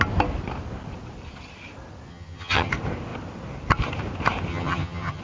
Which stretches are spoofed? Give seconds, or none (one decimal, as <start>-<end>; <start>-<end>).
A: 2.1-2.7; 4.5-5.2